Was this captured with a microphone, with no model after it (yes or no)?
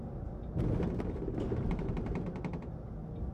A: yes